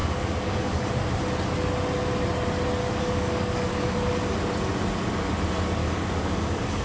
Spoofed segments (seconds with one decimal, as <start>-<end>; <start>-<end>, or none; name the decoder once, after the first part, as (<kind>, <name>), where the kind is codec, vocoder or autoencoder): 0.0-0.9 (codec, DAC); 2.8-4.3; 5.8-6.8